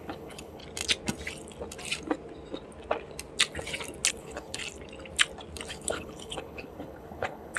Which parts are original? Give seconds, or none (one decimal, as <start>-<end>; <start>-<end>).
0.6-4.1; 4.6-5.7